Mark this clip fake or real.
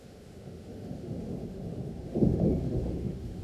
fake